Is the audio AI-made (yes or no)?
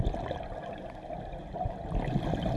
no